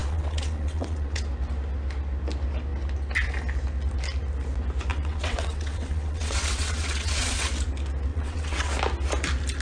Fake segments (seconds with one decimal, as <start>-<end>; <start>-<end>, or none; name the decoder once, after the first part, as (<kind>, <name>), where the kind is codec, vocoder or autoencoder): 0.0-1.2 (vocoder, WaveNeXt); 4.9-7.5; 8.1-8.7